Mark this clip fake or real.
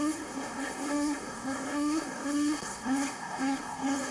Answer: fake